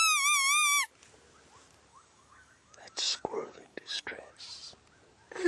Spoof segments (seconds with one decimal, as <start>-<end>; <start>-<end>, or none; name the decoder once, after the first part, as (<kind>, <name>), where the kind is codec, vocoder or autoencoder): 1.9-4.3 (codec, DAC)